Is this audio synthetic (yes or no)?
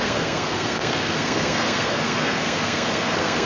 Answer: yes